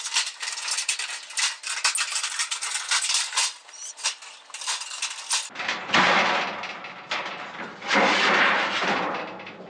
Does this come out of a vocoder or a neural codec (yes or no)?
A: no